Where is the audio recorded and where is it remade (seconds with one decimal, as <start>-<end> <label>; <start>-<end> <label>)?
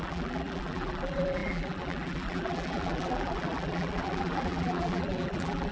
0.0-5.7 remade